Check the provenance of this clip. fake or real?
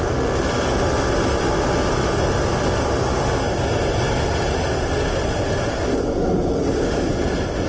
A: real